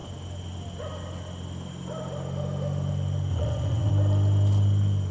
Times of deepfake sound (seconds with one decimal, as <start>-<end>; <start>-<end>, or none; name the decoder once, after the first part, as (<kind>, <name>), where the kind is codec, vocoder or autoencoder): 3.3-3.9 (vocoder, WaveNeXt)